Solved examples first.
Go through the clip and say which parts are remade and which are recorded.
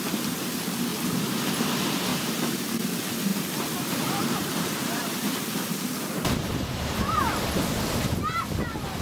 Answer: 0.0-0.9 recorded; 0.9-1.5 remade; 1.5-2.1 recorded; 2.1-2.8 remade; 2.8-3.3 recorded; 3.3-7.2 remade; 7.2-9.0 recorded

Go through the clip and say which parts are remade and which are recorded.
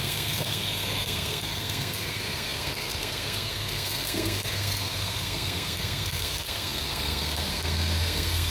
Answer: 0.0-8.5 remade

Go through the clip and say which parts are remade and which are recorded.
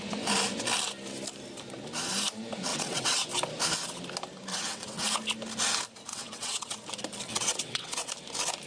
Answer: 0.0-2.7 recorded; 2.7-3.3 remade; 3.3-4.5 recorded; 4.5-5.0 remade; 5.0-6.1 recorded; 6.1-6.7 remade; 6.7-7.3 recorded; 7.3-8.1 remade; 8.1-8.7 recorded